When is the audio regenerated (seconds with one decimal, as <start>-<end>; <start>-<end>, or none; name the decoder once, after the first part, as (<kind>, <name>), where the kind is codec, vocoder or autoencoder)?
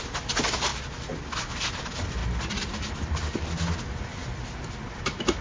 none